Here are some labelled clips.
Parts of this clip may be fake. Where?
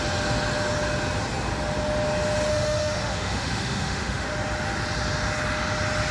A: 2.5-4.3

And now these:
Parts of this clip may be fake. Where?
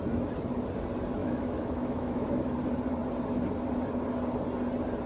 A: 1.2-2.4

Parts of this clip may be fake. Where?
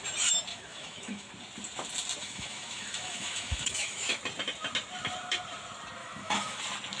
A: 0.5-1.3; 2.2-4.2; 6.0-6.6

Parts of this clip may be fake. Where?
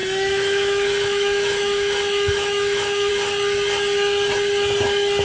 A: 0.0-3.1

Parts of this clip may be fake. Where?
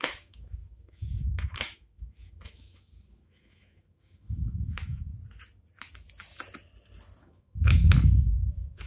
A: 0.0-5.1; 7.2-8.9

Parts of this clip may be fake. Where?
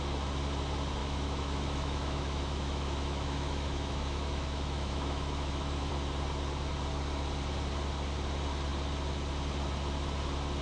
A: 1.0-5.9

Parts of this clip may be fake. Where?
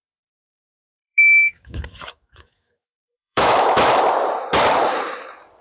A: 0.6-4.0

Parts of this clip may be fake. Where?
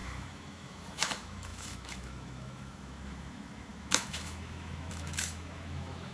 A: 0.0-6.1